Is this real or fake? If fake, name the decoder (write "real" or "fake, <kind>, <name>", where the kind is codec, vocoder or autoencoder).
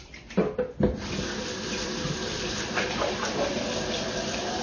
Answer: fake, vocoder, BigVGAN v2